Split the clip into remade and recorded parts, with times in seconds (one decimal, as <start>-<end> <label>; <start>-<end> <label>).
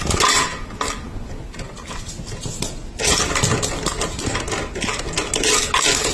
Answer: 0.0-6.1 recorded